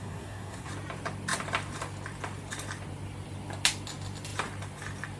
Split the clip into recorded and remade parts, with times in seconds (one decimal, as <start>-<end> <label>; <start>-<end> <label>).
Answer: 0.0-0.7 remade; 0.7-5.2 recorded

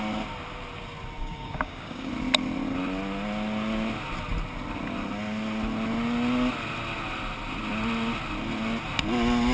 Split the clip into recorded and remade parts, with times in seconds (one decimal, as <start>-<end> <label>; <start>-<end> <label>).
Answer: 0.0-1.2 recorded; 1.2-2.1 remade; 2.1-9.5 recorded

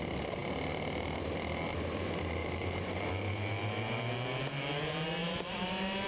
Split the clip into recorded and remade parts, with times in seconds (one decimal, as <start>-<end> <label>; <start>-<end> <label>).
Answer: 0.0-2.4 recorded; 2.4-3.1 remade; 3.1-6.1 recorded

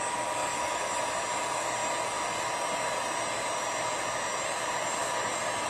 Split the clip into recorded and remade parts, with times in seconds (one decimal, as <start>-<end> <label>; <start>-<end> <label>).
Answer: 0.0-0.4 recorded; 0.4-1.0 remade; 1.0-5.7 recorded